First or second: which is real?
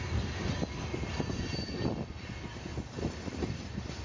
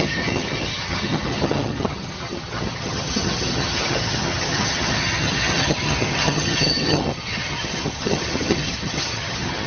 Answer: first